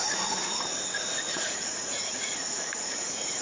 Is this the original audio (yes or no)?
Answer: no